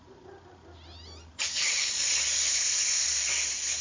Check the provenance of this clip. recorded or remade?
recorded